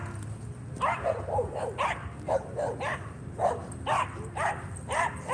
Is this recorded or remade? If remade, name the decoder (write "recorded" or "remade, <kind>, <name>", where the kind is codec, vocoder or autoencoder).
recorded